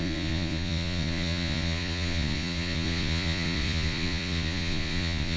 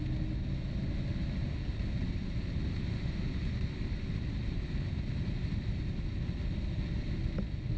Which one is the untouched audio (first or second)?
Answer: second